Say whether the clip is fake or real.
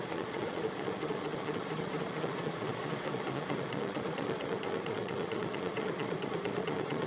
fake